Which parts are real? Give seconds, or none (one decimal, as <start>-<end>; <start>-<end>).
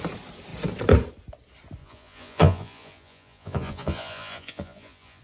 0.0-1.8